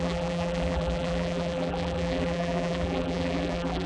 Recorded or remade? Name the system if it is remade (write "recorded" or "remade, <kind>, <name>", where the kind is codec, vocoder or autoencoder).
remade, vocoder, BigVGAN v2